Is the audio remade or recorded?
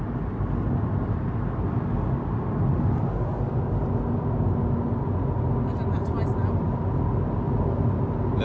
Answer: recorded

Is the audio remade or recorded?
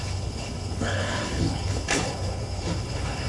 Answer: remade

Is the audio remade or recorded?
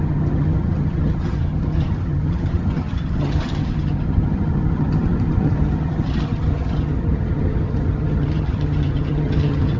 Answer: remade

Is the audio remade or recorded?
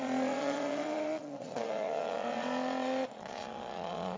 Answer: remade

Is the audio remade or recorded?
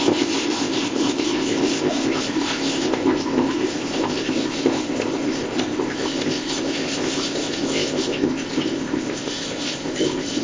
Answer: remade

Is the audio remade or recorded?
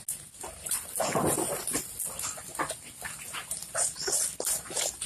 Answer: recorded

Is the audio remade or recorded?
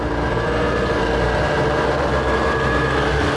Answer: remade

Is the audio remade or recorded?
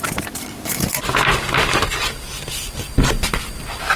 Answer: remade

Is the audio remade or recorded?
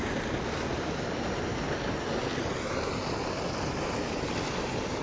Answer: recorded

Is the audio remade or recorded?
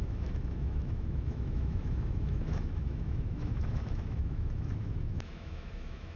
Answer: remade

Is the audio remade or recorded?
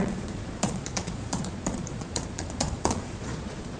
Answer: remade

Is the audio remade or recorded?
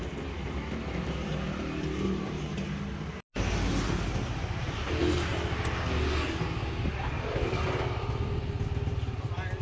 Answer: recorded